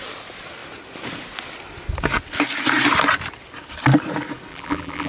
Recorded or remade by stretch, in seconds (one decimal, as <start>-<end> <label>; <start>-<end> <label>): 0.0-4.5 recorded; 4.5-5.1 remade